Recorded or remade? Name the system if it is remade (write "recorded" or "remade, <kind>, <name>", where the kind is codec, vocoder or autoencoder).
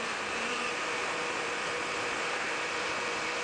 remade, vocoder, BigVGAN v2